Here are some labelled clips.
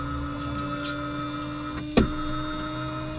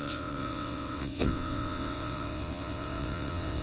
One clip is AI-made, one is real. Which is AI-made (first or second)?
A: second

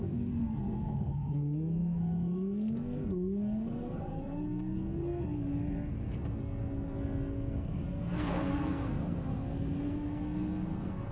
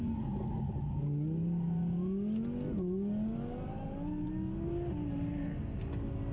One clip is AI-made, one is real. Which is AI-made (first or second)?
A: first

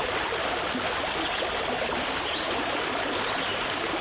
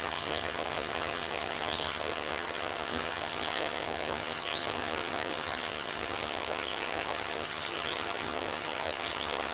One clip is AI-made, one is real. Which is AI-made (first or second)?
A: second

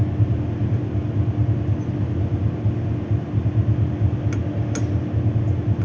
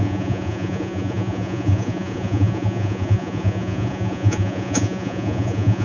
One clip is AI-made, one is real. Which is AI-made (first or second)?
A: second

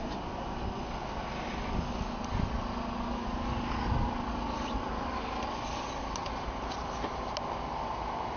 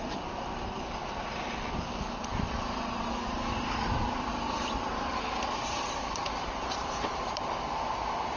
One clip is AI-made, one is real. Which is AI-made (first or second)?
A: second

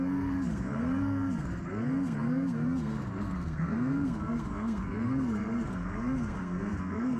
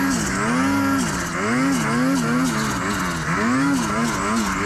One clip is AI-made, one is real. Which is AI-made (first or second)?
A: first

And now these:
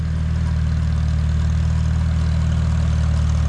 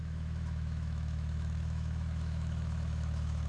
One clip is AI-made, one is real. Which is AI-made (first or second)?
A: second